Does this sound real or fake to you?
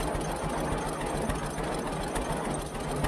real